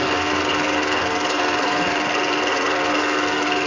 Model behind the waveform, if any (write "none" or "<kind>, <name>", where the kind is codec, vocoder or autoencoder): codec, SNAC